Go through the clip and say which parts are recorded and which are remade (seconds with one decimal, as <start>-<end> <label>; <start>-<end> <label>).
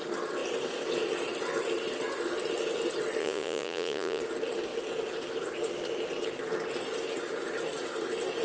0.0-3.2 recorded; 3.2-4.2 remade; 4.2-8.4 recorded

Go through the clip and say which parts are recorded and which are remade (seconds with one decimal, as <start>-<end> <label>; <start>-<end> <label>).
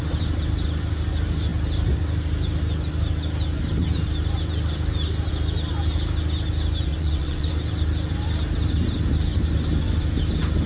0.0-6.9 recorded; 6.9-7.5 remade; 7.5-10.7 recorded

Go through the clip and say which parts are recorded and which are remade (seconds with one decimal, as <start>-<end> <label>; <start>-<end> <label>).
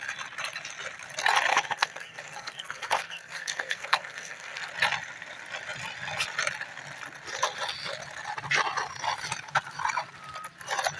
0.0-1.5 recorded; 1.5-4.7 remade; 4.7-11.0 recorded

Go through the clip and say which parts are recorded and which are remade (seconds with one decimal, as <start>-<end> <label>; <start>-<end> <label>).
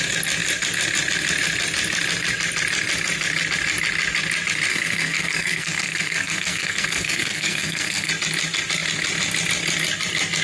0.0-4.7 recorded; 4.7-8.1 remade; 8.1-10.4 recorded